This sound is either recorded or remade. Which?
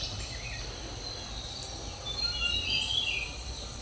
recorded